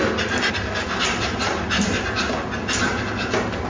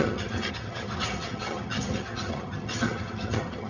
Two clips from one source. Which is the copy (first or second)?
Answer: second